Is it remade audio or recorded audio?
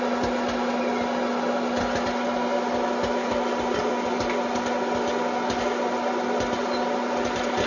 recorded